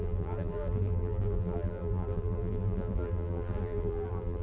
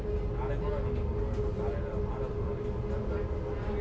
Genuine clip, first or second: second